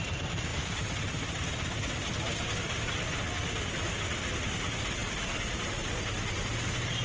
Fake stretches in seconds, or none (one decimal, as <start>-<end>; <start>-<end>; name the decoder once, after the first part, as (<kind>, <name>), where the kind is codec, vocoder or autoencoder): 0.5-1.2 (vocoder, BigVGAN v2); 5.0-6.6